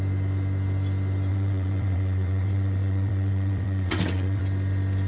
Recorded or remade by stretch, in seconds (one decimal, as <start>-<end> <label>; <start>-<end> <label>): 0.0-1.3 recorded; 1.3-4.4 remade; 4.4-5.1 recorded